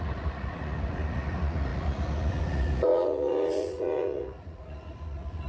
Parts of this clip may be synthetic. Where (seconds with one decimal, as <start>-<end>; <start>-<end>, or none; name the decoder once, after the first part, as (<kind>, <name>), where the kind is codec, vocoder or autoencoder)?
0.0-5.5 (vocoder, Vocos)